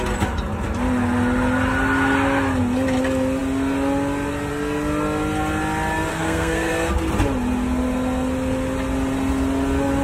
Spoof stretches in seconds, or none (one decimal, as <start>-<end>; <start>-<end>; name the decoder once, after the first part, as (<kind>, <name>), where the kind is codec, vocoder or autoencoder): 6.1-6.7 (codec, SNAC)